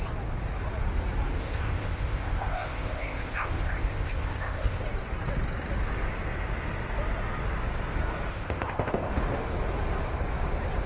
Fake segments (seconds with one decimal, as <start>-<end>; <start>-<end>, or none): 1.4-4.8; 8.3-9.1